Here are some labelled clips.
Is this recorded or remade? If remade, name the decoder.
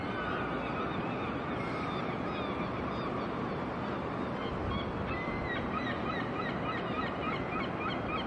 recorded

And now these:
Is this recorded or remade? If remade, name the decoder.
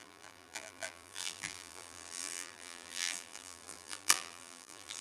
remade, vocoder, BigVGAN v2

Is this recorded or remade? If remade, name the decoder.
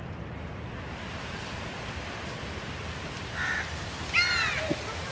recorded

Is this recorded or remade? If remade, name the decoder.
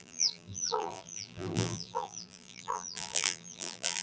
remade, vocoder, BigVGAN v2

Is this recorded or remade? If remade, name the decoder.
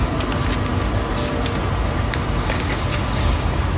recorded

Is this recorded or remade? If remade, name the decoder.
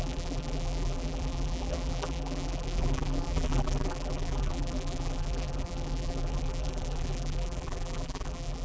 remade, vocoder, BigVGAN v2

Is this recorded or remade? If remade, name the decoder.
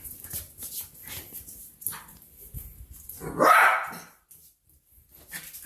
recorded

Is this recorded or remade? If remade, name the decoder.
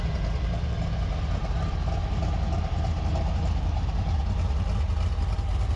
recorded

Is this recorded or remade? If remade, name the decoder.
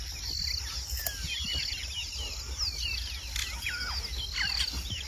recorded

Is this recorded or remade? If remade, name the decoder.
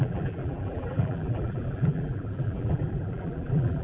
remade, vocoder, BigVGAN v2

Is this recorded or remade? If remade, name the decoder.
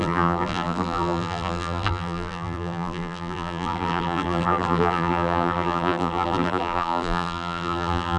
remade, vocoder, BigVGAN v2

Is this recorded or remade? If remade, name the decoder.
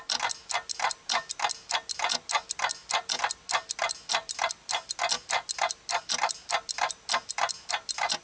recorded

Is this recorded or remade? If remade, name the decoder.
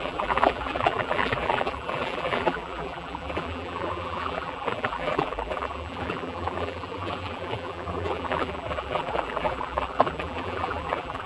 remade, vocoder, BigVGAN v2